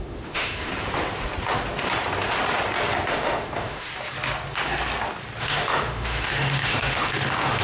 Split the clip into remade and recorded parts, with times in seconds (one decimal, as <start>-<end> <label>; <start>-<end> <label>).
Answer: 0.0-0.7 remade; 0.7-3.1 recorded; 3.1-3.9 remade; 3.9-5.4 recorded; 5.4-7.6 remade

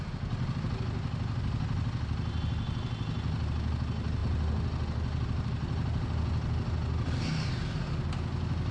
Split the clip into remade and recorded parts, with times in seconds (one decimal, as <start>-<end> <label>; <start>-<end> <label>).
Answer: 0.0-8.7 recorded

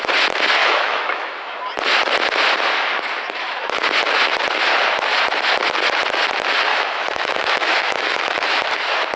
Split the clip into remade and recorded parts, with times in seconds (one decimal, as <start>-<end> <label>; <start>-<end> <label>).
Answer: 0.0-0.6 recorded; 0.6-1.6 remade; 1.6-6.7 recorded; 6.7-8.7 remade; 8.7-9.2 recorded

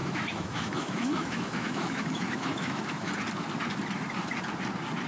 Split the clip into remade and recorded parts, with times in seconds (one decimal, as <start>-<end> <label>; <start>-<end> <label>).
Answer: 0.0-3.1 remade; 3.1-5.1 recorded